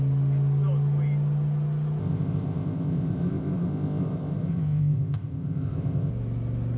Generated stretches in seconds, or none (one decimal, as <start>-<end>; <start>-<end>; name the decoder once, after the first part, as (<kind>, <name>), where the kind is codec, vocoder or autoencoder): 2.0-6.1 (codec, ZipCodec)